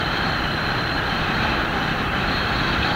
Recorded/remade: recorded